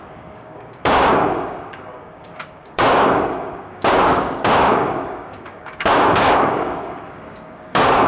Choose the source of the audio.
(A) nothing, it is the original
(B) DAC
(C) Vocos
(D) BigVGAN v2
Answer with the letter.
B